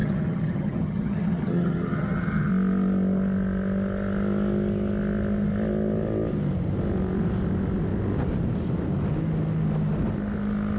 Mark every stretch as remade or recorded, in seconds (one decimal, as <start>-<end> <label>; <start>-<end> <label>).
0.0-2.5 remade; 2.5-10.8 recorded